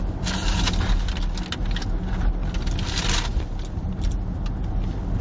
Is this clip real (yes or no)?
yes